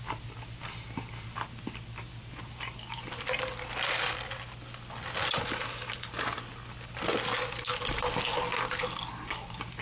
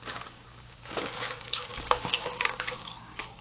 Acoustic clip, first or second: first